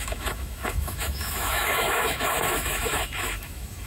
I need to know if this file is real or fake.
fake